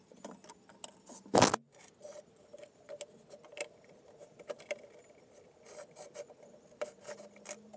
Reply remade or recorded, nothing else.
recorded